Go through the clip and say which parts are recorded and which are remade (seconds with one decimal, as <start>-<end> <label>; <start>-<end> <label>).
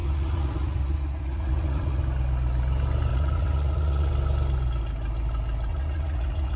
0.0-2.0 remade; 2.0-3.1 recorded; 3.1-4.1 remade; 4.1-5.7 recorded; 5.7-6.6 remade